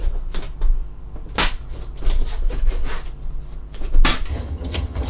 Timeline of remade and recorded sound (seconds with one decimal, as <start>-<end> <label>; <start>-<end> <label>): 0.0-4.3 recorded; 4.3-5.1 remade